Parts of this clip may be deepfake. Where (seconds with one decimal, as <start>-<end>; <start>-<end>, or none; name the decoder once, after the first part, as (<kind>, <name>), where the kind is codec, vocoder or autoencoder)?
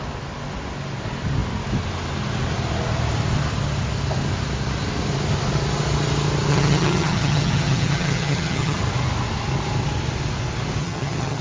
6.5-8.8 (vocoder, HiFi-GAN); 10.8-11.4